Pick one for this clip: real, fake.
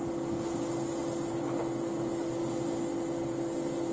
real